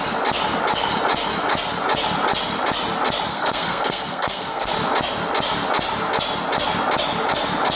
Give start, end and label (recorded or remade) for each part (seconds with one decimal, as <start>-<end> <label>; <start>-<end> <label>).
0.0-3.3 recorded; 3.3-4.7 remade; 4.7-7.8 recorded